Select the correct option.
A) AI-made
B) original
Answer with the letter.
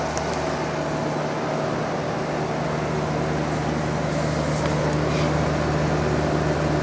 B